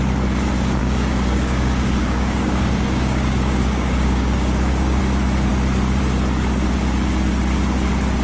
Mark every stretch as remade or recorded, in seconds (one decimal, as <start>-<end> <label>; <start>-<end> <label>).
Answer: 0.0-0.8 recorded; 0.8-5.0 remade; 5.0-8.2 recorded